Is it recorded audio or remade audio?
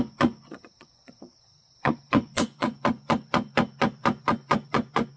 remade